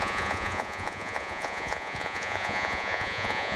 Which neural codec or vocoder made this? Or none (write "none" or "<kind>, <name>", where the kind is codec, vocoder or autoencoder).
vocoder, Vocos